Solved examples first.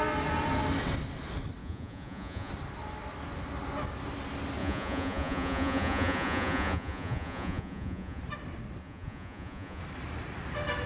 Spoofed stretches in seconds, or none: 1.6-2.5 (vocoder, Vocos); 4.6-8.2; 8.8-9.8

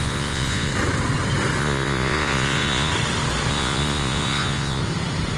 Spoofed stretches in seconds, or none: 0.0-0.7 (vocoder, Vocos); 1.6-2.9; 3.5-4.8